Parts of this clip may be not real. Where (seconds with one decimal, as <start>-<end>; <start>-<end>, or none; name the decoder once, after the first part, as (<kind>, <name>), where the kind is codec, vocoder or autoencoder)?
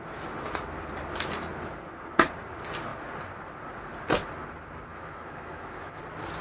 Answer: 4.9-6.0 (autoencoder, DAC-VAE)